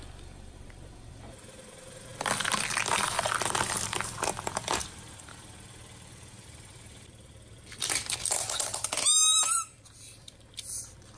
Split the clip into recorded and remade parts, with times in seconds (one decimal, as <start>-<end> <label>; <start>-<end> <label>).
0.0-2.1 remade; 2.1-2.8 recorded; 2.8-11.2 remade